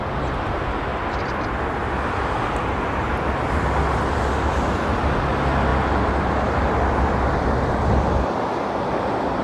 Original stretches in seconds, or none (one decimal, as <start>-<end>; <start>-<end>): 0.0-9.4